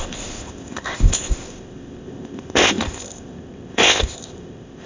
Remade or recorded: remade